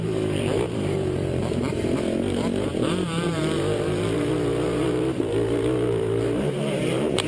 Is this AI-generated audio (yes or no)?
yes